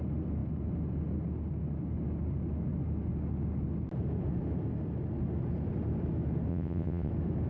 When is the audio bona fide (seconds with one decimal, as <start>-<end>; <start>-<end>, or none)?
0.0-6.5; 7.1-7.5

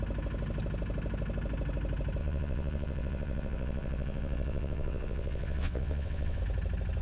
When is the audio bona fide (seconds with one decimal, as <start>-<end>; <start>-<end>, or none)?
0.0-2.2; 6.4-7.0

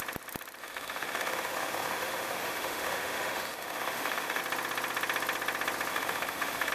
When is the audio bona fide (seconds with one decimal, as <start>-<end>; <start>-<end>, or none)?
0.0-0.6; 4.4-5.9

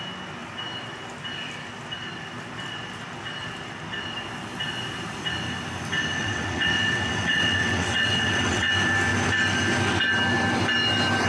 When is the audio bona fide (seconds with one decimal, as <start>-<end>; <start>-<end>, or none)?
0.0-6.2; 8.7-11.3

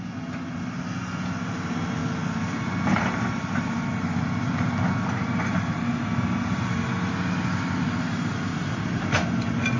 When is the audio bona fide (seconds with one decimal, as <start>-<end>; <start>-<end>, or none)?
0.0-9.8

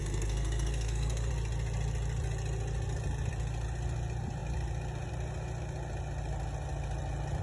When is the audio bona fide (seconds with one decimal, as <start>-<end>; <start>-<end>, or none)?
1.3-7.4